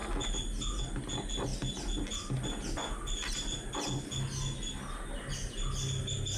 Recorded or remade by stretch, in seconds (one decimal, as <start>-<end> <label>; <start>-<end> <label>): 0.0-6.4 recorded